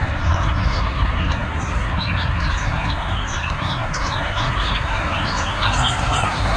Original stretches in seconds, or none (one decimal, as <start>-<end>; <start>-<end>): none